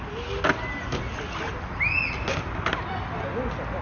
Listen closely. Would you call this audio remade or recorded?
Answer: recorded